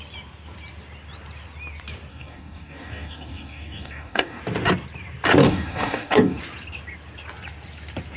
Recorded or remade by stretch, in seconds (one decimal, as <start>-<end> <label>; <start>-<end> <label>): 0.0-2.1 recorded; 2.1-4.4 remade; 4.4-5.4 recorded; 5.4-6.4 remade; 6.4-8.2 recorded